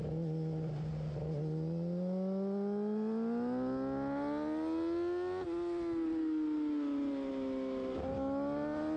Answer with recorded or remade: recorded